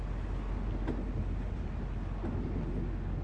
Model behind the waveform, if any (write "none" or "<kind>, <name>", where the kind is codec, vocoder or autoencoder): none